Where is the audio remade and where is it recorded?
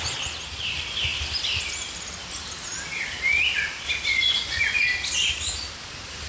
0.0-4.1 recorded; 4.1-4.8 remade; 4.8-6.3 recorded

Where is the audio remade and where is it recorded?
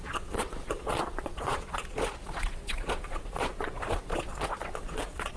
0.0-5.4 remade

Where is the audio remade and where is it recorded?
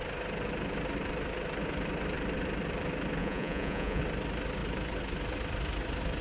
0.0-3.2 recorded; 3.2-4.0 remade; 4.0-6.2 recorded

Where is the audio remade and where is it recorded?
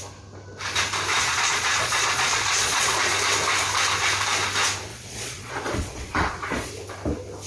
0.0-1.1 recorded; 1.1-3.0 remade; 3.0-4.9 recorded; 4.9-6.7 remade; 6.7-7.5 recorded